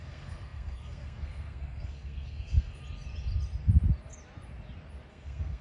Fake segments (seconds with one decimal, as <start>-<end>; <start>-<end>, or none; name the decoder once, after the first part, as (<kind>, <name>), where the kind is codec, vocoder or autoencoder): 0.0-2.8 (codec, SNAC); 5.1-5.6